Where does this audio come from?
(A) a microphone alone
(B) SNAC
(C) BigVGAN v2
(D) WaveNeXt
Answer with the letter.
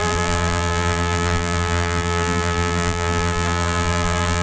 C